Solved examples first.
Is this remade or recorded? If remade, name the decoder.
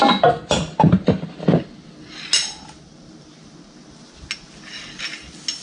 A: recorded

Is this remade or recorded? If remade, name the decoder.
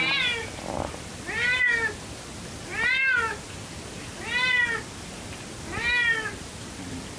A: recorded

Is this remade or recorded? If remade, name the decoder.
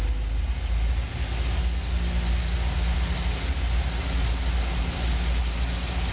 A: recorded